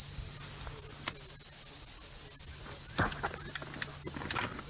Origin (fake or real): real